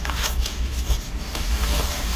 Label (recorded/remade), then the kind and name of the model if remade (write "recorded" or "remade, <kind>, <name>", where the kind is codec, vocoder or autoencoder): remade, codec, DAC